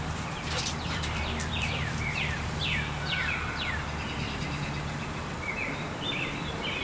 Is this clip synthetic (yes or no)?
yes